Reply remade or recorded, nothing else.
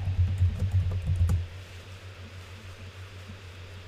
remade